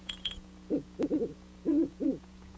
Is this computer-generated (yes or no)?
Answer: yes